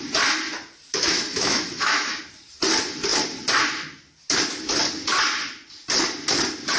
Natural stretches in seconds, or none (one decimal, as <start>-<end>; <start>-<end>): 0.0-0.9; 2.2-6.8